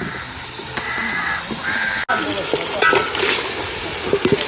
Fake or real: real